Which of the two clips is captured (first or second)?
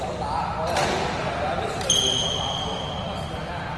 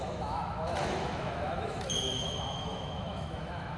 first